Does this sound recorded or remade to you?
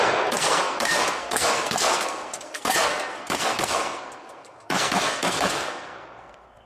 remade